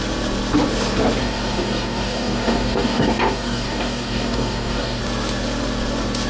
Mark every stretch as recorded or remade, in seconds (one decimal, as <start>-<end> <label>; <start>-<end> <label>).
0.0-1.2 recorded; 1.2-5.0 remade; 5.0-6.3 recorded

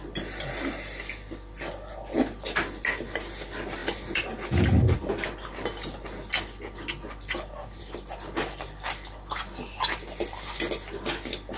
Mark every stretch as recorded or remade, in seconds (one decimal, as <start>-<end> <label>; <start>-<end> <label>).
0.0-11.6 recorded

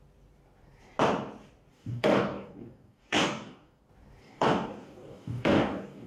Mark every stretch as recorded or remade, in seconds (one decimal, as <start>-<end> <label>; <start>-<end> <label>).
0.0-1.7 recorded; 1.7-3.8 remade; 3.8-4.2 recorded; 4.2-6.1 remade